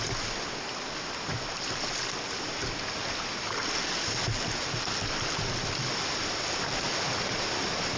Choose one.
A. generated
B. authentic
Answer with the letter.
B